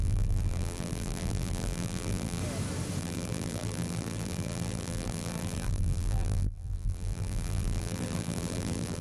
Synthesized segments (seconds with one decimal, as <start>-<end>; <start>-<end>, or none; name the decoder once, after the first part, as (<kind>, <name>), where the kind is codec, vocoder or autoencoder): 0.0-2.4 (vocoder, BigVGAN v2); 3.0-9.0